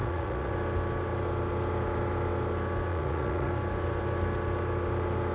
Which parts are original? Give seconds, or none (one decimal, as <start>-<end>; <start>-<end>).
0.5-2.9; 3.5-5.3